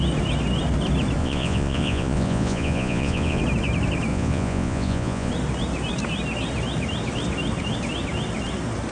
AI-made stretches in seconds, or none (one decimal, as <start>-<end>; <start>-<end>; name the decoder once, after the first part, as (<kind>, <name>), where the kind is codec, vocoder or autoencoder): 1.2-3.4 (vocoder, Vocos); 4.1-5.3